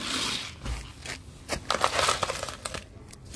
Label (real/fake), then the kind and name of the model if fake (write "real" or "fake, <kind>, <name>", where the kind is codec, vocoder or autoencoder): real